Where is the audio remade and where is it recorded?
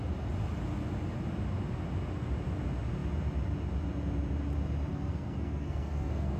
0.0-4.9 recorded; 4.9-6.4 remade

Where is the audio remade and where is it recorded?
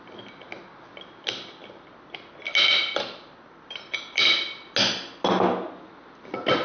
0.0-6.6 recorded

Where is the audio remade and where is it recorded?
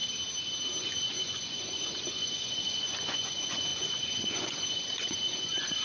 0.0-0.8 recorded; 0.8-5.8 remade